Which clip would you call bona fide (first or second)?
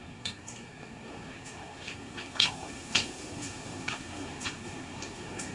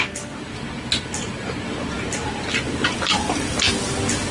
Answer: second